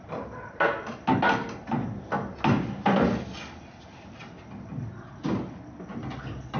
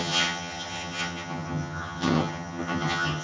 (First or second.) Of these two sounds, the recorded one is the first